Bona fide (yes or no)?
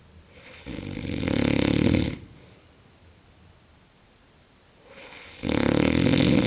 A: yes